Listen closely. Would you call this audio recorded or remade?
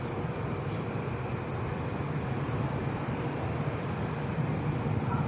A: remade